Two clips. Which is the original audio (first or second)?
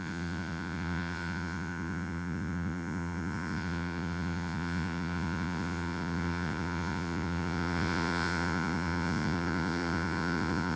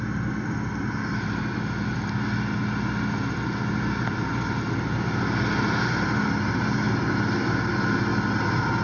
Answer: second